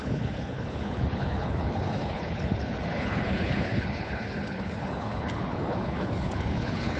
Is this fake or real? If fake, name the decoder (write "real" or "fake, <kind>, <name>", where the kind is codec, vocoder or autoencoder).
fake, codec, HILCodec